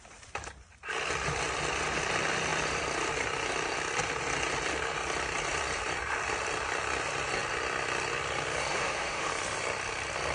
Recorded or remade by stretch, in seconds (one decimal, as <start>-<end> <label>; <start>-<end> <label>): 0.0-8.7 recorded; 8.7-9.3 remade; 9.3-10.3 recorded